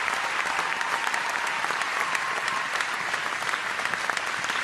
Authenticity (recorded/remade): recorded